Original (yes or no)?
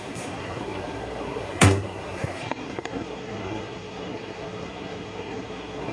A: no